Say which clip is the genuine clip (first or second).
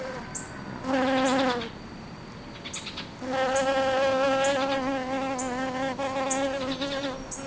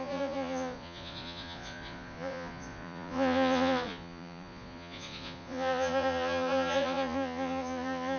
first